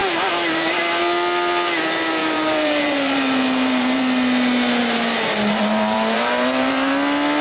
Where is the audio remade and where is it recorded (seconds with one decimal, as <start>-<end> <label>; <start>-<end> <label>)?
0.0-0.8 remade; 0.8-2.2 recorded; 2.2-4.0 remade; 4.0-4.8 recorded; 4.8-6.9 remade; 6.9-7.4 recorded